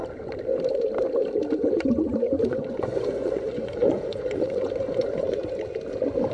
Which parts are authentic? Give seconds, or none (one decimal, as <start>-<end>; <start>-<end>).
0.0-1.6; 5.4-6.3